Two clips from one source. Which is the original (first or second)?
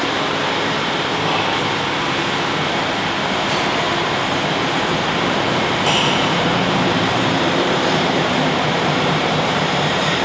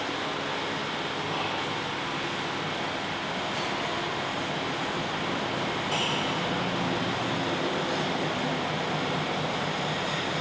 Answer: second